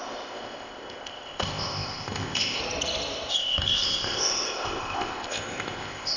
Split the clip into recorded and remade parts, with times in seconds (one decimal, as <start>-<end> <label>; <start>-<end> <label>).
0.0-2.6 remade; 2.6-3.3 recorded; 3.3-6.2 remade